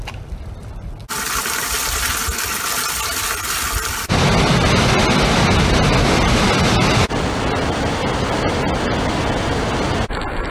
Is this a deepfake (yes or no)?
no